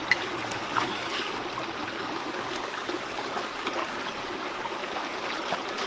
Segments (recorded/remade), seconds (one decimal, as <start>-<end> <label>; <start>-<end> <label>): 0.0-0.7 recorded; 0.7-1.3 remade; 1.3-1.8 recorded; 1.8-5.3 remade; 5.3-5.9 recorded